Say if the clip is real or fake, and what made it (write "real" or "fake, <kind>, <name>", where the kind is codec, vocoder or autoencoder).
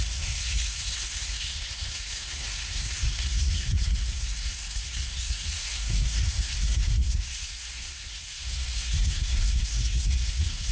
fake, codec, SNAC